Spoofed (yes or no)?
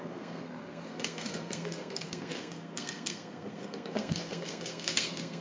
yes